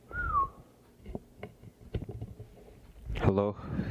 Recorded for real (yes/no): yes